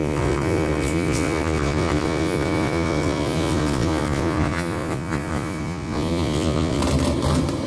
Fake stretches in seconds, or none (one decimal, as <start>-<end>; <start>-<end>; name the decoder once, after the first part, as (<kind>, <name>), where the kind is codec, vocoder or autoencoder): 0.0-6.8 (vocoder, Vocos)